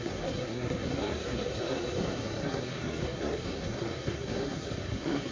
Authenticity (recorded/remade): remade